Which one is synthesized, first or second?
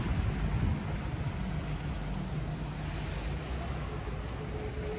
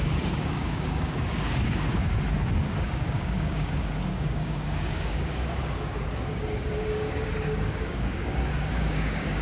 second